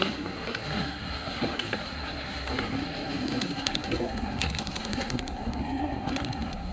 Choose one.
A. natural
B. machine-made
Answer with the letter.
B